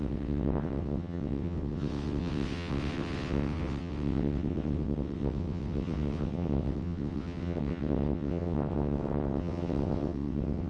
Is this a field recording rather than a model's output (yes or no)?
no